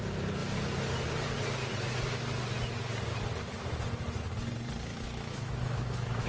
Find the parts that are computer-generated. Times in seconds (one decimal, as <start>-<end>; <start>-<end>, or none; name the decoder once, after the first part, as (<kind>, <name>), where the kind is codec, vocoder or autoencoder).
4.9-6.3 (autoencoder, DAC-VAE)